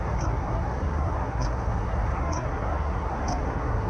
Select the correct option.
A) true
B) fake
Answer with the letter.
B